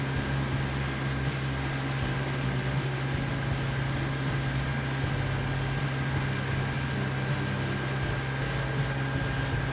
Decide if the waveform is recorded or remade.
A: recorded